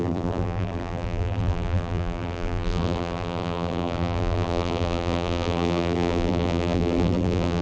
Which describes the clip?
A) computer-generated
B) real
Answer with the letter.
A